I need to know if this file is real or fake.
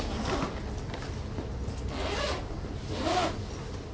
real